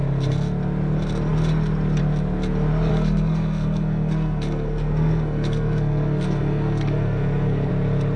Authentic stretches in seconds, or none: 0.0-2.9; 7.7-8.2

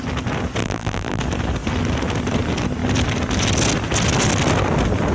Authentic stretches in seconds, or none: 0.0-0.6; 1.2-5.1